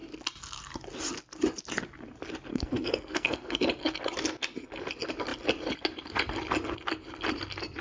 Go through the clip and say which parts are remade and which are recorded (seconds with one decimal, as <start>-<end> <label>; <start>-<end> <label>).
0.0-2.5 recorded; 2.5-3.6 remade; 3.6-7.8 recorded